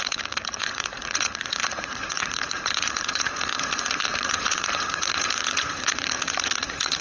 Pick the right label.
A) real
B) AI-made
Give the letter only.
B